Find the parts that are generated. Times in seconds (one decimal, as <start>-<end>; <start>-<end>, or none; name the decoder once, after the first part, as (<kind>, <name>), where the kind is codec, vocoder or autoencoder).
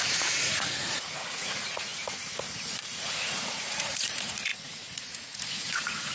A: 0.0-1.9 (vocoder, Vocos); 2.5-6.1